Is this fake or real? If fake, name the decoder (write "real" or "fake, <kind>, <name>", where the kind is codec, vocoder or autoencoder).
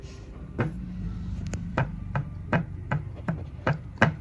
fake, vocoder, BigVGAN v2